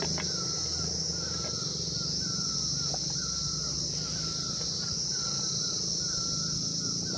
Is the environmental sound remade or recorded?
recorded